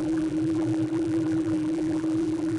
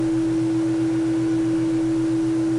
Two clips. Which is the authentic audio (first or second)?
second